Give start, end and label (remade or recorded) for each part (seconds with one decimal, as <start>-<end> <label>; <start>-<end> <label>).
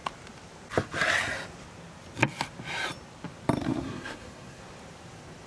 0.0-3.6 recorded; 3.6-4.6 remade; 4.6-5.5 recorded